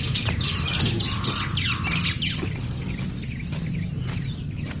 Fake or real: real